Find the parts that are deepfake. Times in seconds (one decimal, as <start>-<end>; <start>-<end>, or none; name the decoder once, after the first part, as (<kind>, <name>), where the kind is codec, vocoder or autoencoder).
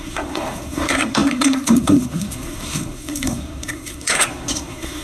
0.0-5.0 (codec, SNAC)